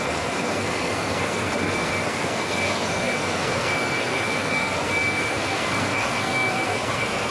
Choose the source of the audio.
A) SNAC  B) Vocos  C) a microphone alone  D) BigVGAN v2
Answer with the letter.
A